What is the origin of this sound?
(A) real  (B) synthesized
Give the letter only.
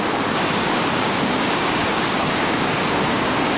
B